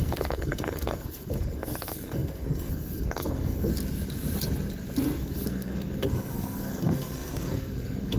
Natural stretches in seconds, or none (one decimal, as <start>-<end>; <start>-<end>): 3.7-5.2